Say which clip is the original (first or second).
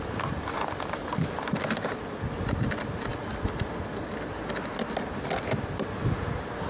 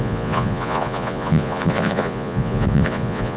first